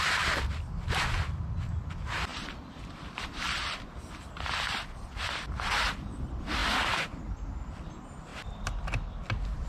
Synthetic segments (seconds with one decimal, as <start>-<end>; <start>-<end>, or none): 2.3-3.8; 8.3-9.7